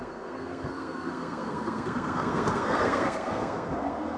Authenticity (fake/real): fake